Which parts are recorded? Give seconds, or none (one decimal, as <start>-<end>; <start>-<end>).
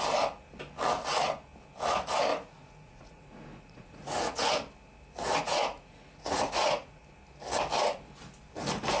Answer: 0.0-2.3; 4.5-5.2; 7.0-9.0